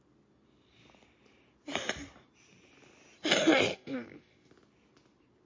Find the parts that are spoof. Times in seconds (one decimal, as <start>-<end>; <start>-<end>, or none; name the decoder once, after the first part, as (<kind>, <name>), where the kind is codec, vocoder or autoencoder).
3.7-4.5 (codec, SNAC)